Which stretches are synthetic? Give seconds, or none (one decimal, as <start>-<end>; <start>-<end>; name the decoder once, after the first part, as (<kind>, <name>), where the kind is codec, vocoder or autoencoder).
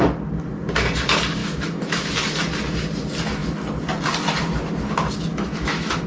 1.4-2.1 (autoencoder, DAC-VAE); 5.3-6.1